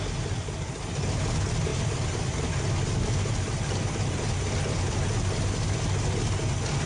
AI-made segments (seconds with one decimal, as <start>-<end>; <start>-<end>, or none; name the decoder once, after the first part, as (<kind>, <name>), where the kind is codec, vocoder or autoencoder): 1.7-2.5 (vocoder, BigVGAN v2)